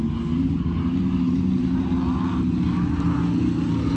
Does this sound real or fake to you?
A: real